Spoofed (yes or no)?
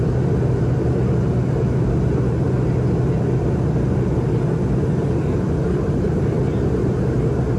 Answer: no